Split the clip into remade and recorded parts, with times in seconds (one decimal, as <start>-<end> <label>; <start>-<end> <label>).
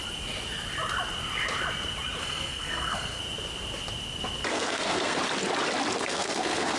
0.0-2.2 recorded; 2.2-3.2 remade; 3.2-4.5 recorded; 4.5-5.2 remade; 5.2-6.0 recorded; 6.0-6.8 remade